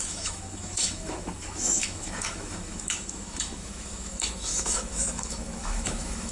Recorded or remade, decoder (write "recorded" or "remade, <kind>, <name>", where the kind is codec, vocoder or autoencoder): remade, autoencoder, DAC-VAE